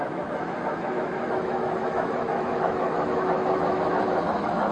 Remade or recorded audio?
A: remade